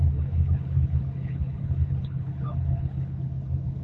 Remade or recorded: remade